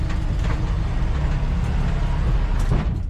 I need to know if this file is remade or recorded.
recorded